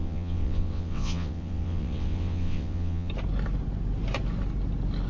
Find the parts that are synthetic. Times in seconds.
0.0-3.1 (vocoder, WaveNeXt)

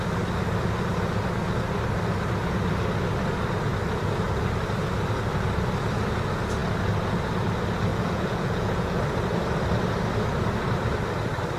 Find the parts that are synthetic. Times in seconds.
7.9-9.0 (vocoder, Vocos)

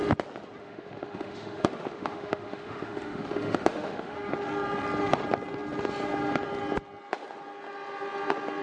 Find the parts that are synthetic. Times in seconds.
0.6-4.3 (autoencoder, DAC-VAE)

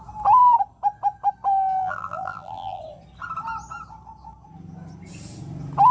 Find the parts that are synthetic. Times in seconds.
1.8-2.8 (vocoder, BigVGAN v2)

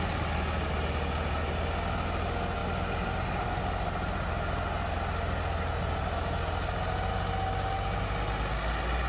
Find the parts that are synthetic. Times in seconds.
none

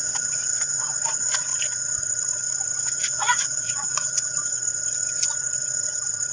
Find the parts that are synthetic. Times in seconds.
0.0-1.5 (vocoder, Vocos); 2.8-4.6